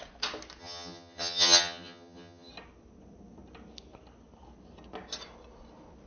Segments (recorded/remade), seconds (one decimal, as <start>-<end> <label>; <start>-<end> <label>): 0.0-0.6 recorded; 0.6-2.5 remade; 2.5-6.1 recorded